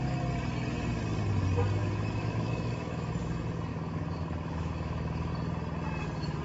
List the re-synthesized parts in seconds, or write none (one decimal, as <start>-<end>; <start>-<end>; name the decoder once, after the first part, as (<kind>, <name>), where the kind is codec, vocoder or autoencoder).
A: 1.8-3.1 (autoencoder, DAC-VAE); 3.7-5.3